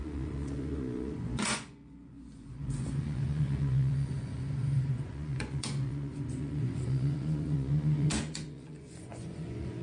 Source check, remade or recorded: remade